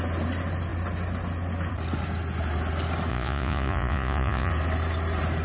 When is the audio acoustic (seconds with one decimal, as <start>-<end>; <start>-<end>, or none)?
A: 0.0-3.1; 4.5-5.4